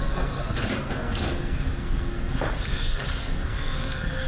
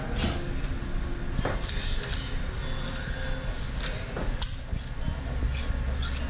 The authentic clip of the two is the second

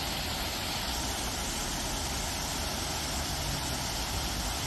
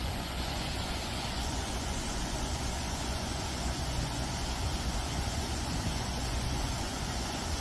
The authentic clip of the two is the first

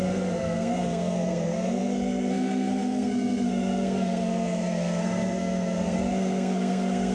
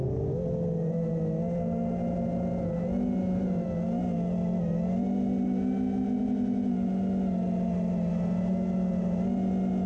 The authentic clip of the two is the second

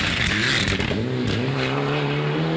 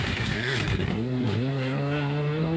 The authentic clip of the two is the first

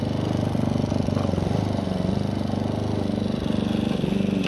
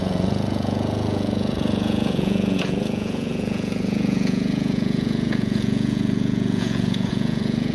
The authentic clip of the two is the first